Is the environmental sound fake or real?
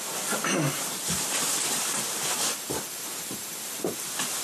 real